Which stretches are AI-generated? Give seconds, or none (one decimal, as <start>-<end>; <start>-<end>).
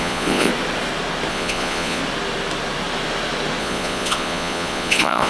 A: 0.0-0.5; 1.3-2.0; 3.6-5.3